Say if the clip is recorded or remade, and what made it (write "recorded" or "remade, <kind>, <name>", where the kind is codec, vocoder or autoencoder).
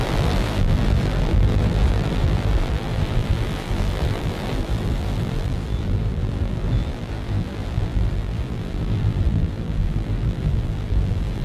remade, vocoder, BigVGAN v2